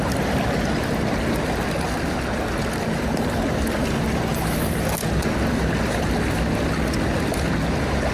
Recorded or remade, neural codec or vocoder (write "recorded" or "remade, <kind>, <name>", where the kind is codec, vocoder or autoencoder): recorded